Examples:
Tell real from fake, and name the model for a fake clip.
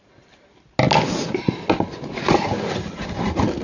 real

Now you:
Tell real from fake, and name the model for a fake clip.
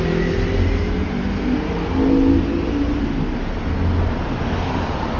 real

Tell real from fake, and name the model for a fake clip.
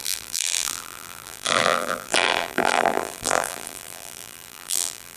fake, vocoder, BigVGAN v2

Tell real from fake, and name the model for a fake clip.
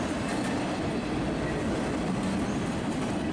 real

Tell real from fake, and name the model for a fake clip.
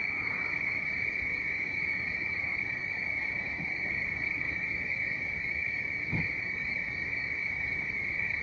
fake, codec, DAC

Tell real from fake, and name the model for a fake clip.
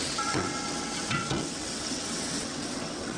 fake, vocoder, WaveNeXt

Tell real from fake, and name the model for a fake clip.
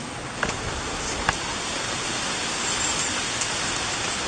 real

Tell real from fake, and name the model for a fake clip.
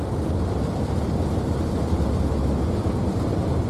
real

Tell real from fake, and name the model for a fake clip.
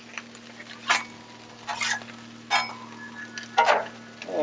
real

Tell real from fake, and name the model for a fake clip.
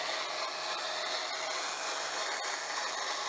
real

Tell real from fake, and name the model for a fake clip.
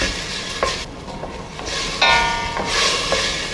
real